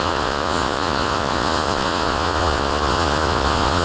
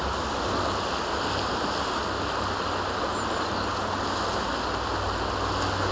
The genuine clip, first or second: second